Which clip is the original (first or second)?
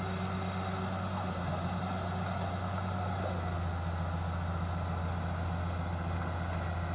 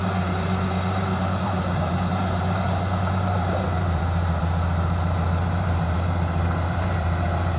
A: first